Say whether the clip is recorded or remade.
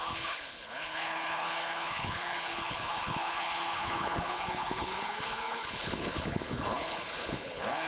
remade